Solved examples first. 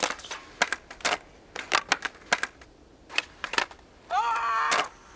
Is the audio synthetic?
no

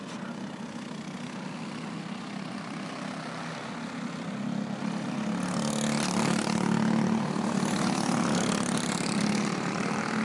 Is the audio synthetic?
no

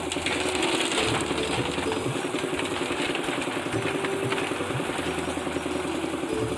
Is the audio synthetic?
no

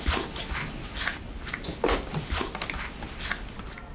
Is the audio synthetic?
no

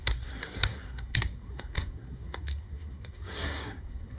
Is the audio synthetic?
yes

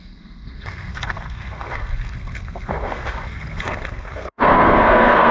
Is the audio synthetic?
yes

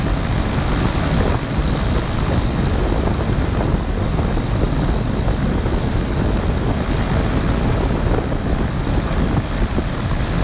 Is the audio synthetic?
no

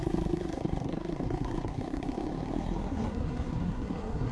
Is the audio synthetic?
yes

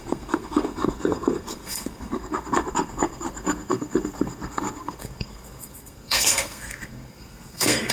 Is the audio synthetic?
yes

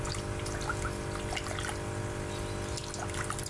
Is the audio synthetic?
no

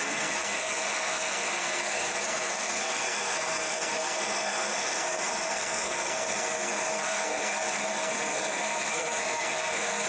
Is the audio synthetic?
yes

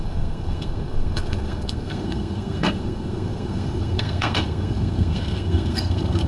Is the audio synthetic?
yes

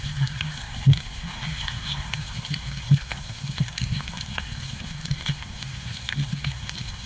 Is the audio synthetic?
yes